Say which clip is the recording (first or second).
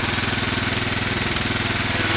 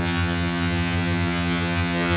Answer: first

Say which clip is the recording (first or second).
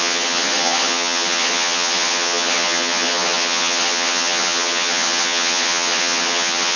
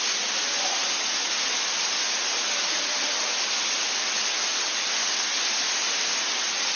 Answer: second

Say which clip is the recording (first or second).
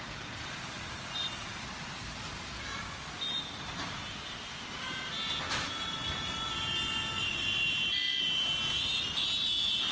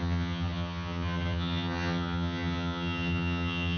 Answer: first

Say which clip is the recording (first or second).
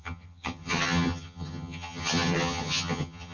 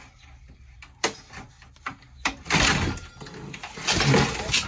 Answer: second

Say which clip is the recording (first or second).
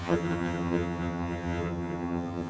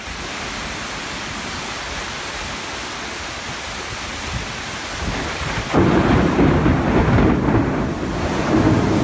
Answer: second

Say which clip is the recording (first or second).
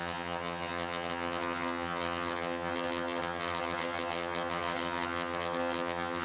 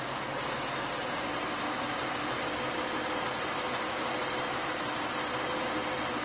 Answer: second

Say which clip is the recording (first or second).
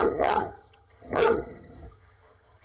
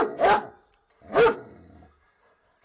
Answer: second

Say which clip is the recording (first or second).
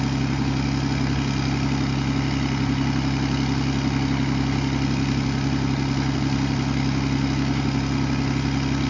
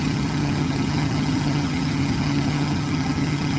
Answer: first